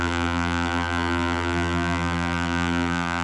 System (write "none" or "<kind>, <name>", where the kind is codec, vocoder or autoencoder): vocoder, BigVGAN v2